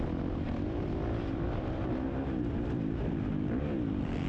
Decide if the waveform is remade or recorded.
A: remade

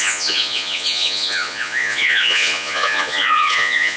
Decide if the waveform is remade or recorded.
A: remade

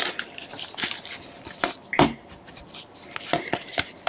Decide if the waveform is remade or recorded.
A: recorded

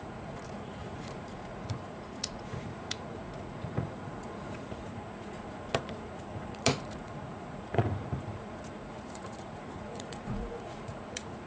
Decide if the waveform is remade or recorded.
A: remade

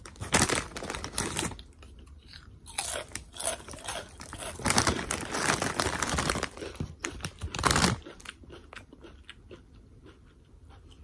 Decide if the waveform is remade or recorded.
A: remade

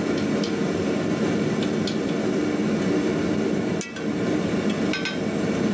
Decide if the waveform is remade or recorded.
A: recorded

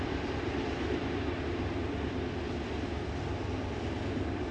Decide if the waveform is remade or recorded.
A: recorded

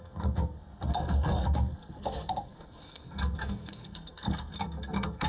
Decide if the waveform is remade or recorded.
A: remade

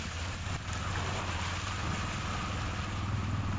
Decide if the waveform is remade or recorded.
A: recorded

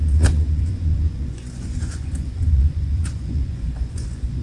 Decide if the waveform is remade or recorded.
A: remade